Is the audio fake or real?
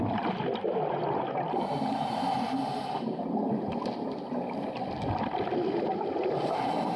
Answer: real